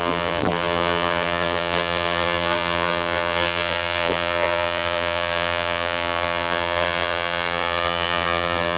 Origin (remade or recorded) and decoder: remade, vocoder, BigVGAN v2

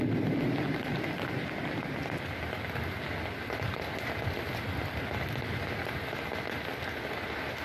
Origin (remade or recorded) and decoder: recorded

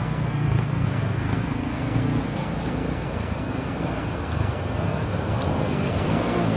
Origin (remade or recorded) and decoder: remade, codec, SNAC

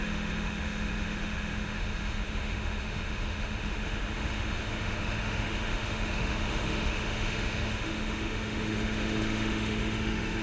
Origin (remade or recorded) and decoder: remade, autoencoder, DAC-VAE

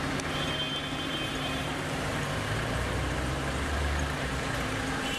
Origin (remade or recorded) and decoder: remade, vocoder, BigVGAN v2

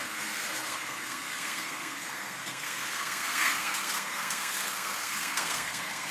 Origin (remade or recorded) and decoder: remade, codec, SNAC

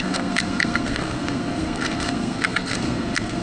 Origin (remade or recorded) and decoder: remade, codec, SNAC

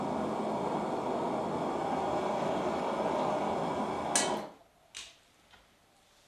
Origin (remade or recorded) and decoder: recorded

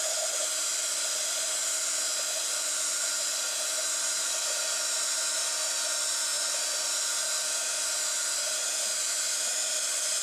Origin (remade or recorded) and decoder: recorded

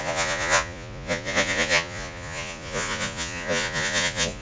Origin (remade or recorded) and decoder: remade, vocoder, Vocos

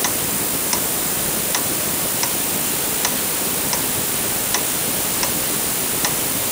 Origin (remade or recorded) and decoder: recorded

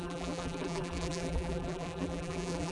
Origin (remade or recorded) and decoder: remade, vocoder, BigVGAN v2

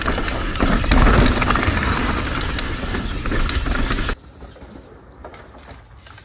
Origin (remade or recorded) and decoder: recorded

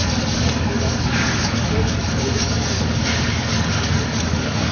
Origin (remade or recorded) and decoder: remade, codec, DAC